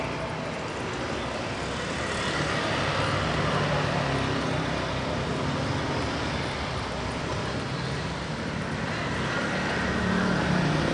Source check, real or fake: real